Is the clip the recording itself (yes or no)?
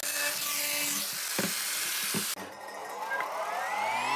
yes